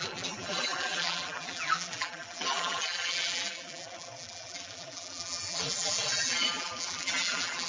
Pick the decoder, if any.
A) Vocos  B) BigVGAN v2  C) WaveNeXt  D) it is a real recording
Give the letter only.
B